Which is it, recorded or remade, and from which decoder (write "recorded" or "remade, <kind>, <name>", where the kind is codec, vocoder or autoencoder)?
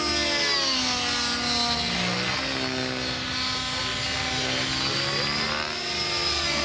recorded